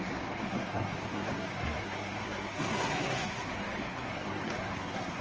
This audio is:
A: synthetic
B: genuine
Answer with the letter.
A